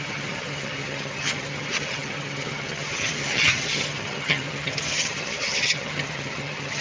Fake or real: fake